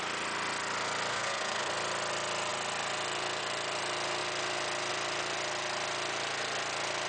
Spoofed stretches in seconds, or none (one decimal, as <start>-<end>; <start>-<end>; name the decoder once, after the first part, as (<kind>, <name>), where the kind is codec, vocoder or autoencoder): 1.1-1.7 (codec, SNAC)